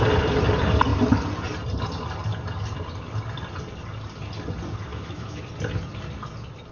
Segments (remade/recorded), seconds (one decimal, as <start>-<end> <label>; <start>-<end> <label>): 0.0-4.9 recorded; 4.9-5.4 remade; 5.4-6.7 recorded